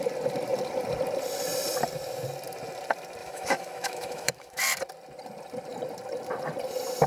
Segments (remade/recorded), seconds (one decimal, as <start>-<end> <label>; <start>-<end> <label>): 0.0-3.2 recorded; 3.2-4.6 remade; 4.6-7.1 recorded